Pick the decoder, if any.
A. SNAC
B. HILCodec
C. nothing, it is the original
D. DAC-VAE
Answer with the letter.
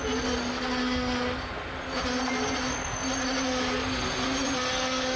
C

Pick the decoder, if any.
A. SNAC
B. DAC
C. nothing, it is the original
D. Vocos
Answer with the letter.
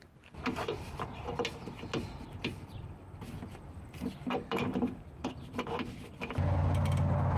C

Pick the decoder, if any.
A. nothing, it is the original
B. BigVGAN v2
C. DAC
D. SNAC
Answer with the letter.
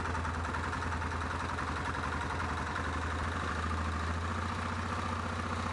A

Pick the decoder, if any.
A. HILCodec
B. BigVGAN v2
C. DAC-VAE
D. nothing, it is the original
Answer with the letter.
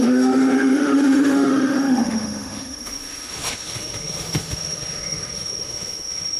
C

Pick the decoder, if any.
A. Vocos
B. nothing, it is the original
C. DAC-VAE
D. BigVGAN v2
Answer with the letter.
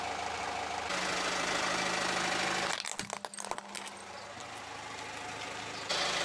B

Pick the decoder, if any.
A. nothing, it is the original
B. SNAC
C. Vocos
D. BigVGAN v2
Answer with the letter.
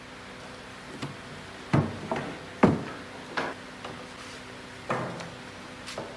A